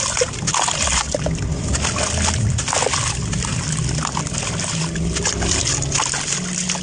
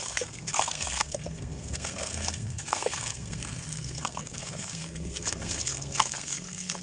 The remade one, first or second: second